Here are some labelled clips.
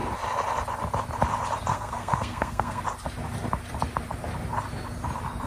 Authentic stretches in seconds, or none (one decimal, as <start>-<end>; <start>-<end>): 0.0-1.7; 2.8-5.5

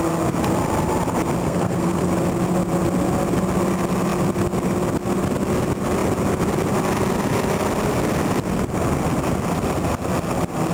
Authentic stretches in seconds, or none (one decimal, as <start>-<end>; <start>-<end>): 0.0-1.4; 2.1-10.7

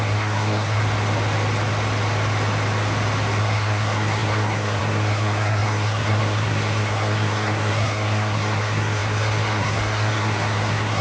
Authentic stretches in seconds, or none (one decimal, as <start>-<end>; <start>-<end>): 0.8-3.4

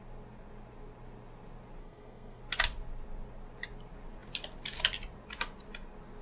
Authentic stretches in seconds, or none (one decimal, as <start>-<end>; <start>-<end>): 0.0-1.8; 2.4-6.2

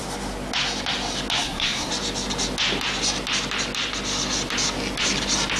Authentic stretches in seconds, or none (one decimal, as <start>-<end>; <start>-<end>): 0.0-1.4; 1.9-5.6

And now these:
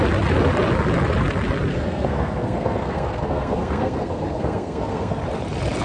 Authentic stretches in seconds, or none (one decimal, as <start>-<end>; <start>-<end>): 0.0-1.7; 5.2-5.8

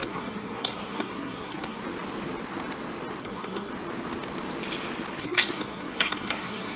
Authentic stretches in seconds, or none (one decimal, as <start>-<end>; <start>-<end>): 1.8-3.2; 3.7-5.2